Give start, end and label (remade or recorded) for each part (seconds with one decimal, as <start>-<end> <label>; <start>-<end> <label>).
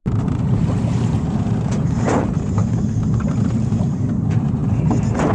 0.0-5.3 remade